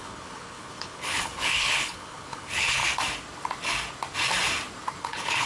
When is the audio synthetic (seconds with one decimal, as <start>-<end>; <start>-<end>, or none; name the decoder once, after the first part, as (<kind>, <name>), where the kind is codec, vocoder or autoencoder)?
0.0-2.8 (codec, HILCodec); 5.0-5.5